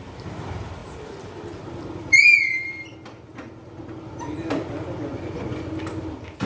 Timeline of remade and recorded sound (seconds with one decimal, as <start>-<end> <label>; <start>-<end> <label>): 0.0-5.1 recorded; 5.1-5.7 remade; 5.7-6.5 recorded